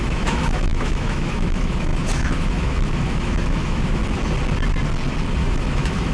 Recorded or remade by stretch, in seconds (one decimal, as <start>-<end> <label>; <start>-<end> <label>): 0.0-4.0 remade; 4.0-5.4 recorded; 5.4-6.1 remade